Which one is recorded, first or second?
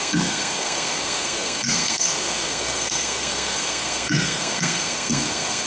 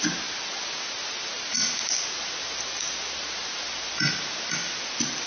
second